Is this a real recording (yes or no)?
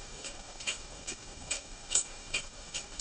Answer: no